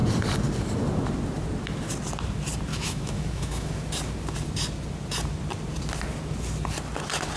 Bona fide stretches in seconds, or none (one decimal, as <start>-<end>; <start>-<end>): 0.0-2.7; 3.7-7.4